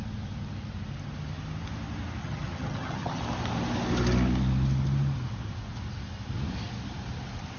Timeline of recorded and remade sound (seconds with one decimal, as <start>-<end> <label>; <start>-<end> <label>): 0.0-2.2 recorded; 2.2-3.2 remade; 3.2-7.6 recorded